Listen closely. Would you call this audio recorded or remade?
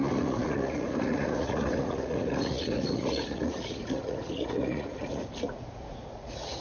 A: remade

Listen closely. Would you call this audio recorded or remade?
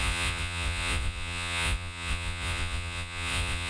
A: remade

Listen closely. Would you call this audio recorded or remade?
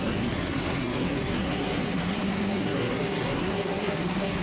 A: remade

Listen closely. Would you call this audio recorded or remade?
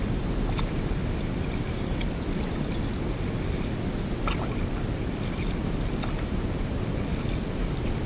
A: recorded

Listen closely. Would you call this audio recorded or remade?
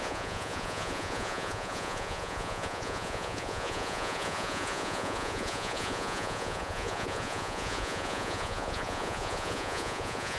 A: remade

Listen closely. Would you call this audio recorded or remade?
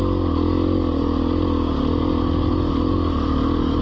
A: recorded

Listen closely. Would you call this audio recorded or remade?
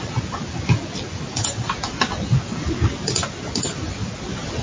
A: recorded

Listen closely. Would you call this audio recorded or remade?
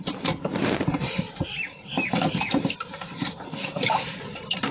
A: remade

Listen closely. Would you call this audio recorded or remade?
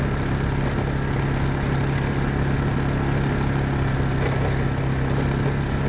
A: recorded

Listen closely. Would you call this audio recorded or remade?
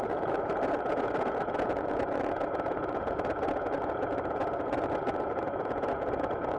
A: remade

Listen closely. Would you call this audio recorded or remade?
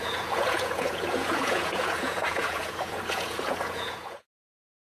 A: remade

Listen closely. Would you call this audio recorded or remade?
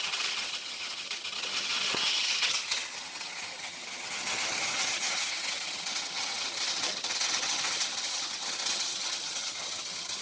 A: remade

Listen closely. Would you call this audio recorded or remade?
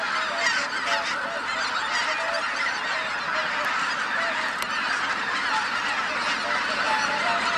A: recorded